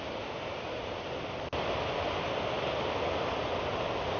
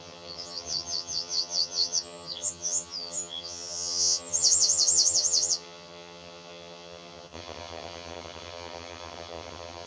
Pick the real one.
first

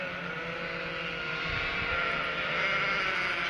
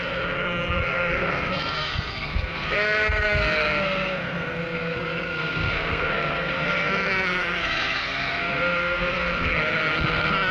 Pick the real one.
first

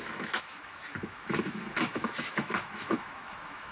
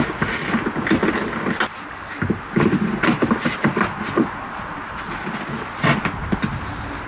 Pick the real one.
second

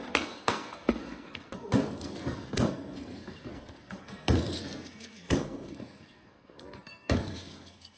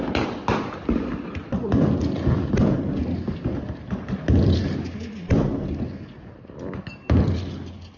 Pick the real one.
second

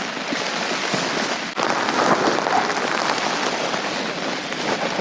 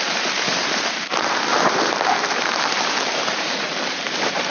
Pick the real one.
first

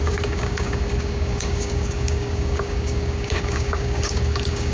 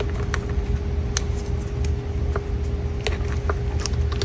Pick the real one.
second